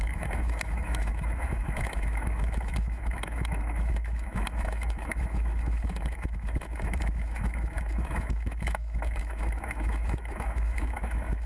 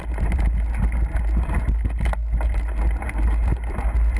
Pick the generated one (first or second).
first